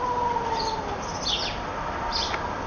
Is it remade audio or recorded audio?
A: recorded